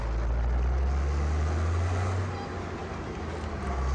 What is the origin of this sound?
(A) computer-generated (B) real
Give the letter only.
B